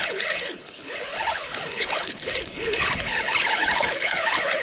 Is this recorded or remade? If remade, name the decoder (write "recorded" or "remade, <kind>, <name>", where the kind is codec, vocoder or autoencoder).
remade, codec, HILCodec